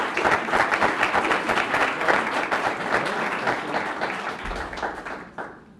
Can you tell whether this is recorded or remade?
recorded